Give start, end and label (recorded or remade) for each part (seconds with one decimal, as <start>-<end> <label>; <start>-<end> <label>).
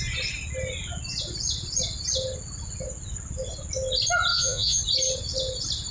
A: 0.0-4.3 recorded; 4.3-4.8 remade; 4.8-5.9 recorded